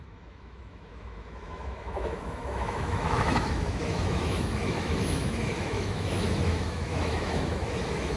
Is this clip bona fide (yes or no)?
no